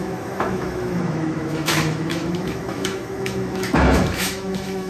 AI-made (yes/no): yes